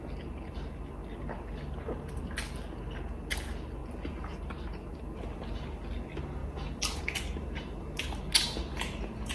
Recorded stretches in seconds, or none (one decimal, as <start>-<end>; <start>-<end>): 0.0-9.3